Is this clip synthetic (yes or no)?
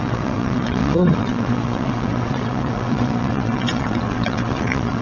yes